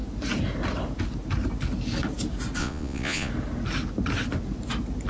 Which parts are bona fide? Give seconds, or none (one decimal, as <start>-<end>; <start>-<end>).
0.0-2.6; 3.3-5.1